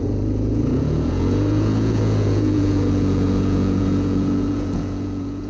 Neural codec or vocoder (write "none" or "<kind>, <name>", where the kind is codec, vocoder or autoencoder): vocoder, Vocos